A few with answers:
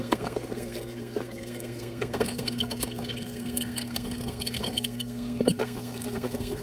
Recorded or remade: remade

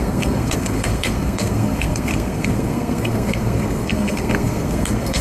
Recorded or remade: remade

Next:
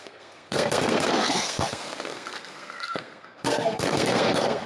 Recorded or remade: remade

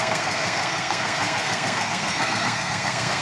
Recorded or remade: remade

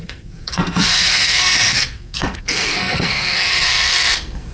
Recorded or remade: remade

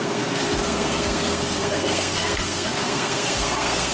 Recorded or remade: remade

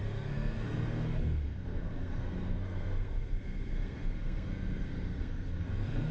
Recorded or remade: remade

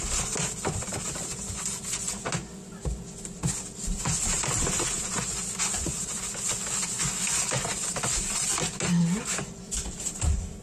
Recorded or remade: recorded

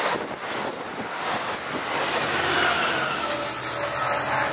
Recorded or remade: recorded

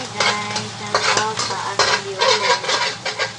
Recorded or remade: recorded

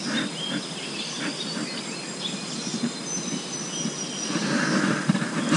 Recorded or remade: recorded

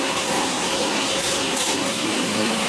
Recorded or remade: remade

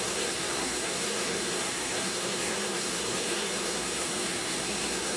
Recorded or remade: remade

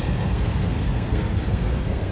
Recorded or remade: remade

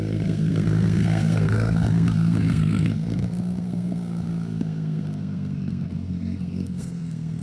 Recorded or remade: remade